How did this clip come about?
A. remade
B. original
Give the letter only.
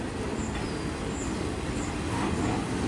B